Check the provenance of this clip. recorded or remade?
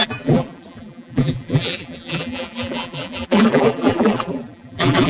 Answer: remade